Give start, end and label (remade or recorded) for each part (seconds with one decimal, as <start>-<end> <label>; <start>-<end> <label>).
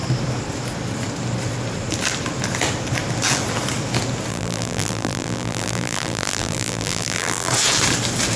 0.0-4.3 recorded; 4.3-7.5 remade; 7.5-8.4 recorded